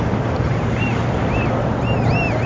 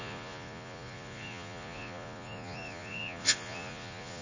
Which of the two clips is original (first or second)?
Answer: first